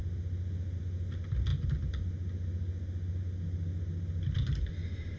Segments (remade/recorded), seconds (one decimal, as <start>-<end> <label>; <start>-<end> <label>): 0.0-5.2 recorded